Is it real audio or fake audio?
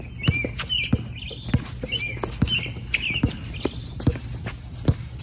real